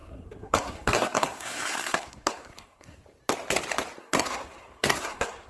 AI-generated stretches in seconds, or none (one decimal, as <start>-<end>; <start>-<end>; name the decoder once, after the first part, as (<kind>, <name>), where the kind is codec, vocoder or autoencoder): 0.0-3.0 (codec, SNAC); 4.0-5.5

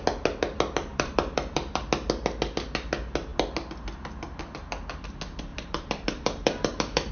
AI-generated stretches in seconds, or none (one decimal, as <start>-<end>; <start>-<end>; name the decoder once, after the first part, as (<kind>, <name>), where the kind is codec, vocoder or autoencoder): 0.9-1.8 (vocoder, BigVGAN v2); 5.5-7.1

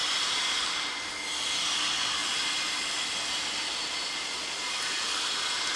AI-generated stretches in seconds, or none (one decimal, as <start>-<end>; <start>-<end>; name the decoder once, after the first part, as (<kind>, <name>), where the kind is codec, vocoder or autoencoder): 0.0-1.1 (vocoder, BigVGAN v2); 2.2-5.8

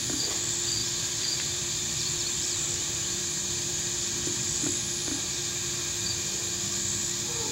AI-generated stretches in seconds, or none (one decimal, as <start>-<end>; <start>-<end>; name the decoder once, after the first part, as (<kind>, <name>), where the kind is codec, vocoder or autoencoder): 0.8-3.7 (vocoder, BigVGAN v2)

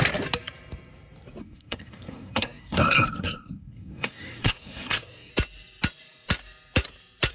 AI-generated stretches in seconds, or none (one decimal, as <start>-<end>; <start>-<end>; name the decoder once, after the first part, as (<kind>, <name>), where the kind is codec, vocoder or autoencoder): 1.4-5.3 (codec, SNAC)